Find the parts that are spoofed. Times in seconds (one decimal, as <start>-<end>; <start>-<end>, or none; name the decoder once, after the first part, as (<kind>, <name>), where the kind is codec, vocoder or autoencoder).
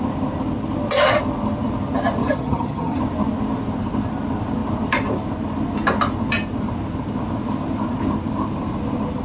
2.2-3.0 (vocoder, HiFi-GAN)